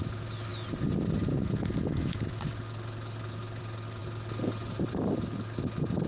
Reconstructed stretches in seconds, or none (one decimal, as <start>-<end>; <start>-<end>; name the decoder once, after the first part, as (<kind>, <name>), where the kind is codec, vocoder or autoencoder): none